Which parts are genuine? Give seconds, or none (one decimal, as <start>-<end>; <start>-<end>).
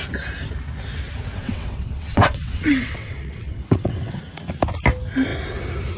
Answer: 0.0-1.4; 4.2-6.0